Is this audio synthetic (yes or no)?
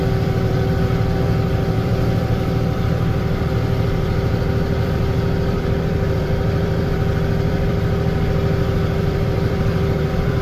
yes